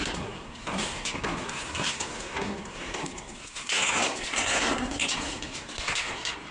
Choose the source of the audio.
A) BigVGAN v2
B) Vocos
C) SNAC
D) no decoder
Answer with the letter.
C